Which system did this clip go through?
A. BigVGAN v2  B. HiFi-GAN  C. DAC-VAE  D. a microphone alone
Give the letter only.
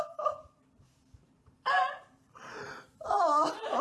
A